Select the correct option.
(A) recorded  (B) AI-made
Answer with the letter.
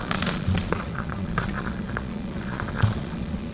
B